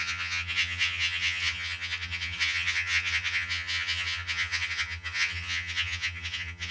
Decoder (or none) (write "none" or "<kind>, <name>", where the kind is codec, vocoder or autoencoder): vocoder, HiFi-GAN